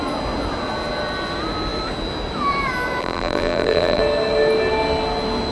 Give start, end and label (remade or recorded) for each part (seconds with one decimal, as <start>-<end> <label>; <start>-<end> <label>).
0.0-3.0 recorded; 3.0-4.0 remade; 4.0-5.5 recorded